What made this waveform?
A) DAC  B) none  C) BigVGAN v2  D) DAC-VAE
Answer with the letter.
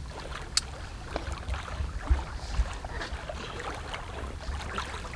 B